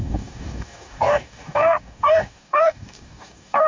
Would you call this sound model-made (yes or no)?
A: yes